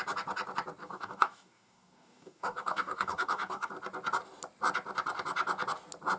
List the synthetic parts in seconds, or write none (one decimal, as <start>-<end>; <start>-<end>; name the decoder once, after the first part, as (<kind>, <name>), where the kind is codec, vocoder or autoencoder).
0.8-3.7 (codec, DAC)